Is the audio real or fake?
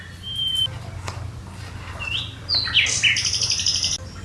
real